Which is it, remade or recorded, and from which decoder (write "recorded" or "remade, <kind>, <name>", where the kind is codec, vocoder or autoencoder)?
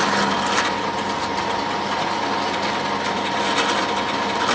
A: recorded